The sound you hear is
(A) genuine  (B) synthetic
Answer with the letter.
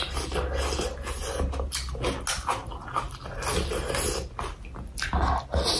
A